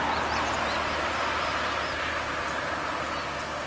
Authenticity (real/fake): real